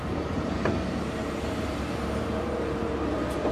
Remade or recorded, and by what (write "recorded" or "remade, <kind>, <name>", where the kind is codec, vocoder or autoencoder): remade, vocoder, BigVGAN v2